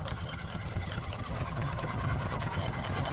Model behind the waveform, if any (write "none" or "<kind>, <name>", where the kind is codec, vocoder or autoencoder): vocoder, HiFi-GAN